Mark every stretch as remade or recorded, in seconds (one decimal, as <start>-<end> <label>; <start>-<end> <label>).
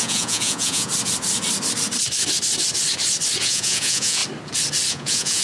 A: 0.0-0.9 remade; 0.9-3.4 recorded; 3.4-4.2 remade; 4.2-4.9 recorded; 4.9-5.4 remade